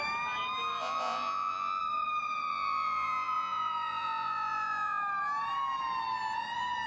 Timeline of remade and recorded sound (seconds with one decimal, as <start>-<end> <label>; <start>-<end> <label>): 0.0-0.7 recorded; 0.7-1.8 remade; 1.8-2.5 recorded; 2.5-5.0 remade; 5.0-6.9 recorded